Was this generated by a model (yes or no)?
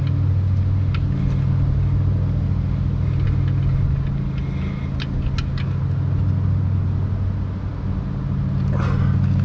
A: no